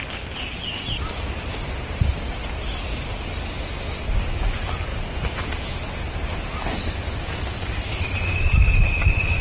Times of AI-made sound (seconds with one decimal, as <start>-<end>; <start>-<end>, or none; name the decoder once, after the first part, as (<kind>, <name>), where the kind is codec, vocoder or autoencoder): none

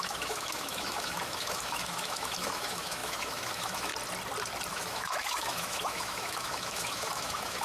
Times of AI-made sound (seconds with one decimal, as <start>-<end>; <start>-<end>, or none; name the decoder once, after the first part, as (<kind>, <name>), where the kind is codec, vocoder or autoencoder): 0.0-3.9 (autoencoder, DAC-VAE); 4.7-7.6

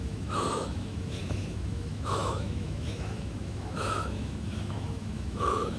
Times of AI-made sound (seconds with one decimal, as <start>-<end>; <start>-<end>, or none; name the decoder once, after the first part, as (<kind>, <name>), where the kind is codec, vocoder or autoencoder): 0.0-5.8 (autoencoder, DAC-VAE)

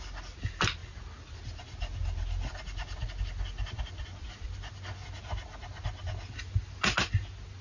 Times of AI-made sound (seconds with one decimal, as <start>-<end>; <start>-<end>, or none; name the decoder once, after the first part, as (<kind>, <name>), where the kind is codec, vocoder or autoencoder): none